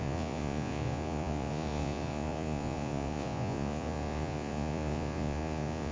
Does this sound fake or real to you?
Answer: fake